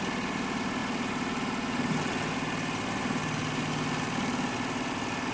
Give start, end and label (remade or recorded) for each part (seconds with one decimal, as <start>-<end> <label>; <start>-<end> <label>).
0.0-5.3 recorded